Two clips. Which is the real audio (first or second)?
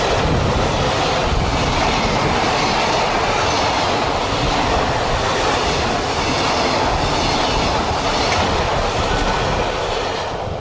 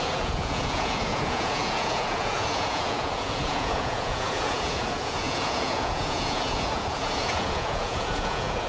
first